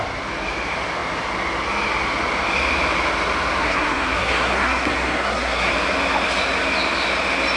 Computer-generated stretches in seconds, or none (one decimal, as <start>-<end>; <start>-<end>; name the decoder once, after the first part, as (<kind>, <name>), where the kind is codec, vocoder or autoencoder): 3.6-5.7 (codec, SNAC)